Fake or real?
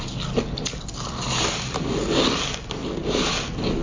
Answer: real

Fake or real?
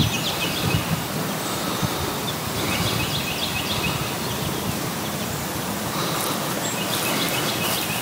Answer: real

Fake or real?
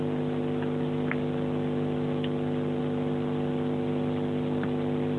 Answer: real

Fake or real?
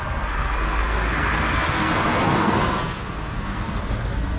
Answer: fake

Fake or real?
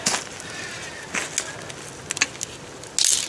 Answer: real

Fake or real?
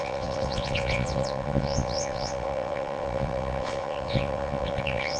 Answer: fake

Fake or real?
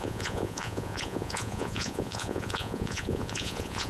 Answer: fake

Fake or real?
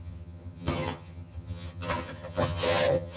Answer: fake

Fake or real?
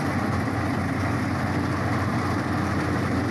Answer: real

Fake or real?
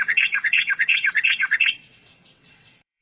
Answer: fake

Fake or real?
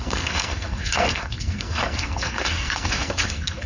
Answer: fake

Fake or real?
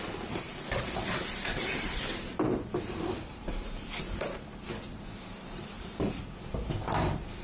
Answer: fake